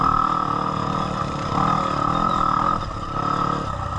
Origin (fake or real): real